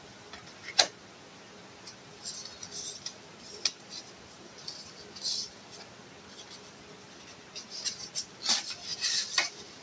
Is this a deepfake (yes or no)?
no